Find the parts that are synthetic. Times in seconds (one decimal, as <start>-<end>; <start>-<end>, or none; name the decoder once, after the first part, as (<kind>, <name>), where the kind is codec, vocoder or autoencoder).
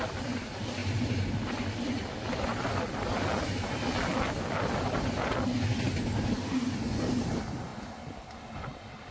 none